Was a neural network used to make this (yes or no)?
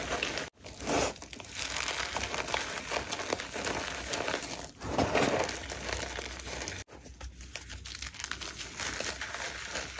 no